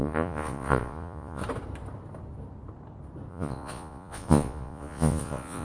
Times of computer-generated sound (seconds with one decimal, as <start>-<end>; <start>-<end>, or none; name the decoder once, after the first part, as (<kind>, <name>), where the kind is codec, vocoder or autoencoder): 0.0-1.4 (vocoder, Vocos); 3.3-5.6